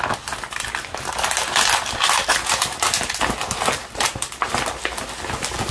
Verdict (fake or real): real